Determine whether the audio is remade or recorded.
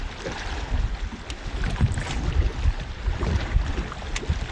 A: recorded